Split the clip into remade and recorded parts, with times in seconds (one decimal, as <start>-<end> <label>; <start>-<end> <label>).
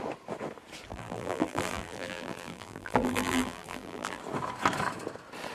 0.0-0.9 recorded; 0.9-4.2 remade; 4.2-5.5 recorded